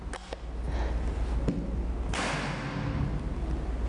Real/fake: real